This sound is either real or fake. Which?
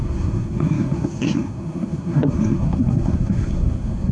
fake